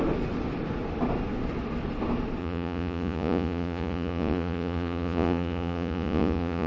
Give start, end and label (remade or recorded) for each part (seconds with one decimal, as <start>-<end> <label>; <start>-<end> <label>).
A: 0.0-2.4 recorded; 2.4-6.7 remade